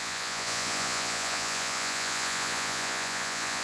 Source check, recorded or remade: remade